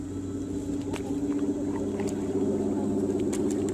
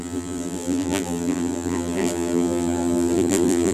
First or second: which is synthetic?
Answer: second